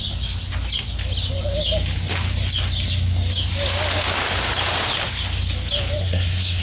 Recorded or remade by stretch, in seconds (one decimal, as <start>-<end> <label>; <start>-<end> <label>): 0.0-6.0 recorded; 6.0-6.6 remade